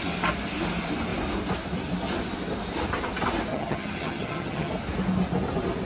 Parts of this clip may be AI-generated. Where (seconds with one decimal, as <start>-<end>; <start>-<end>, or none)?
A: 3.5-4.7